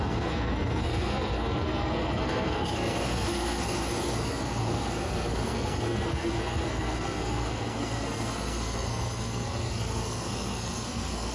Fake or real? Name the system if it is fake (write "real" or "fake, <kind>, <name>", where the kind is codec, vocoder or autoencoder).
fake, codec, SNAC